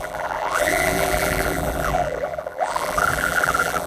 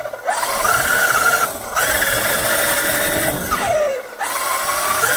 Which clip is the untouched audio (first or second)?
second